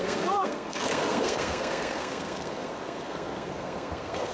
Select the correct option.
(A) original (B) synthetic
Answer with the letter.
B